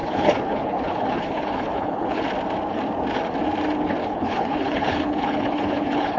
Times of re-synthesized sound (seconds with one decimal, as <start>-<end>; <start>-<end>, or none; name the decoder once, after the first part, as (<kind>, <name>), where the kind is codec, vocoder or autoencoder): 0.0-2.2 (codec, HILCodec); 4.0-6.2